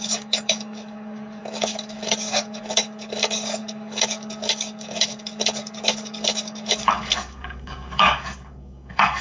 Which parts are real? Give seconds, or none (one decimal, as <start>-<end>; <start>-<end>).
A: none